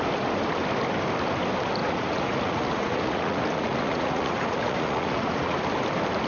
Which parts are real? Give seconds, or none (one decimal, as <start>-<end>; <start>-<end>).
0.0-1.8; 5.6-6.3